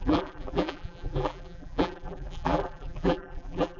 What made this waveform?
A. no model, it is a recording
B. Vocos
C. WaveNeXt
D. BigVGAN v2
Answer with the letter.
D